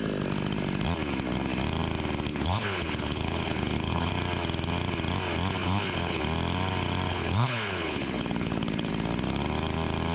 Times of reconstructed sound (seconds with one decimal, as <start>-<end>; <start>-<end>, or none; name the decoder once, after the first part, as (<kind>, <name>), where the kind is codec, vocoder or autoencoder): 2.3-4.1 (codec, HILCodec); 5.6-6.2; 7.1-8.9